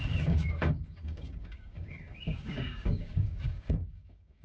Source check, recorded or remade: remade